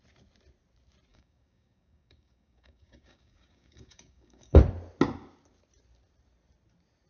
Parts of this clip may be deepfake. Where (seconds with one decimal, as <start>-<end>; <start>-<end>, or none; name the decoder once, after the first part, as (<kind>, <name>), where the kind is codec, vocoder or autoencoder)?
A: 1.1-4.6 (codec, DAC)